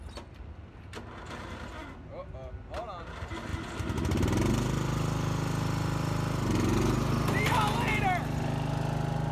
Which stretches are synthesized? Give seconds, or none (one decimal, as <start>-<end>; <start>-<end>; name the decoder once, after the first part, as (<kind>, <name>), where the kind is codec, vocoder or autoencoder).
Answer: none